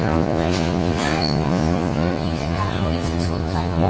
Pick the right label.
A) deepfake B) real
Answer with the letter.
A